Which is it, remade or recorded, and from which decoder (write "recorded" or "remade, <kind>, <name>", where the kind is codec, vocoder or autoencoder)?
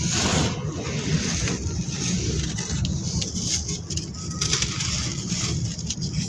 recorded